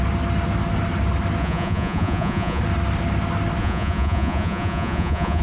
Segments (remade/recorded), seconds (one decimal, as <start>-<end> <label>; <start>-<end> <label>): 0.0-1.4 recorded; 1.4-2.6 remade; 2.6-3.6 recorded; 3.6-5.4 remade